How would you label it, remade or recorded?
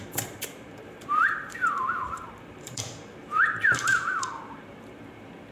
remade